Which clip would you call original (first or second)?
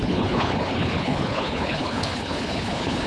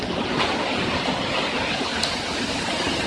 second